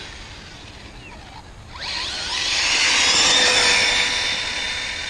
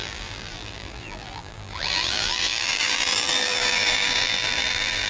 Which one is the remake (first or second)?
second